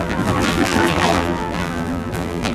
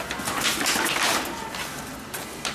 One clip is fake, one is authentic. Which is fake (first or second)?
first